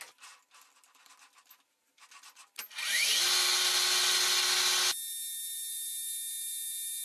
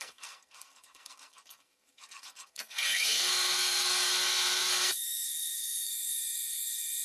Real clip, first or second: first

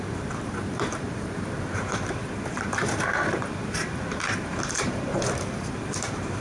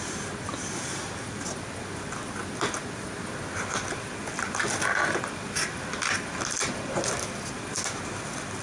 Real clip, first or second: second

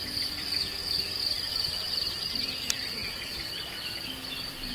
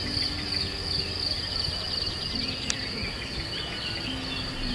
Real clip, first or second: second